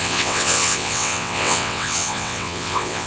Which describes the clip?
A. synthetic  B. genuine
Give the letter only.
A